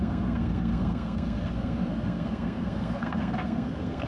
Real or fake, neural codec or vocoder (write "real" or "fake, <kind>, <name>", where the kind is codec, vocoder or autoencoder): fake, codec, SNAC